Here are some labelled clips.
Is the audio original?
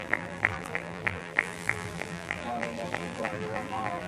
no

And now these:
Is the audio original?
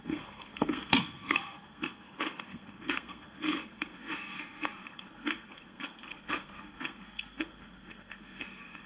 no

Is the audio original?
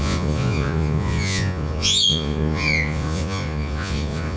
no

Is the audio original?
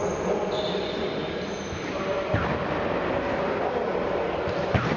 yes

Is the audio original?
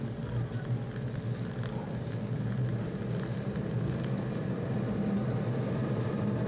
yes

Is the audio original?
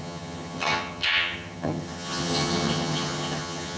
no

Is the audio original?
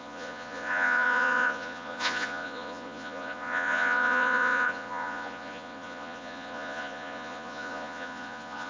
no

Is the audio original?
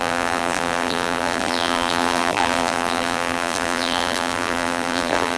no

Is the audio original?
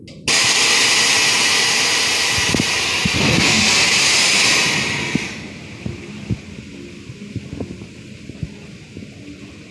yes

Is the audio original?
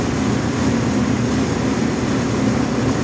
yes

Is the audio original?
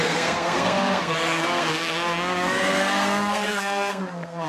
no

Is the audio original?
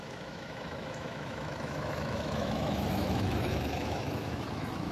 no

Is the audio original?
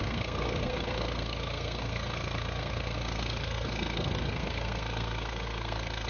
no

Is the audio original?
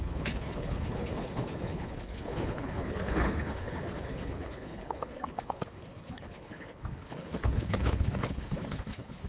no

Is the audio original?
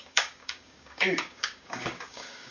no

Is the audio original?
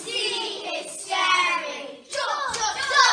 yes